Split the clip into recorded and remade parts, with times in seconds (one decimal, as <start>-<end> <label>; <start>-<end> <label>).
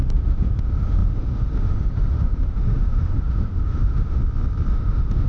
0.0-4.2 remade; 4.2-4.7 recorded; 4.7-5.3 remade